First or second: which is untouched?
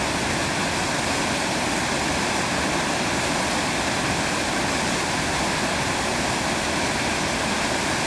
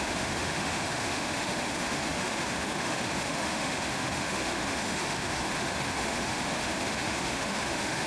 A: first